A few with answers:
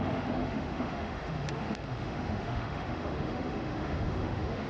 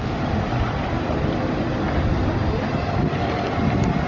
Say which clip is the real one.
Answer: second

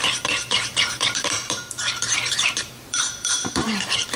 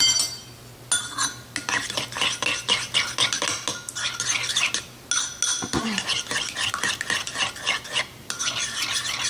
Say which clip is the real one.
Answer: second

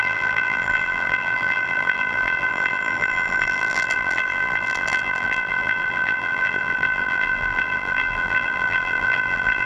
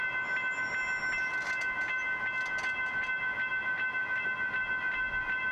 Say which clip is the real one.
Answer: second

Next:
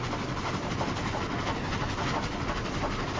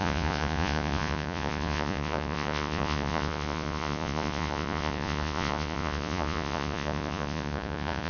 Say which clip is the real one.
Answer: first